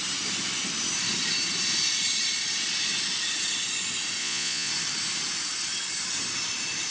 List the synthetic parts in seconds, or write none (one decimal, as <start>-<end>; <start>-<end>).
4.2-4.7